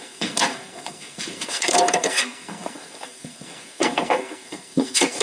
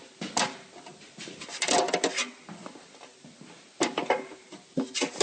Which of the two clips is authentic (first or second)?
second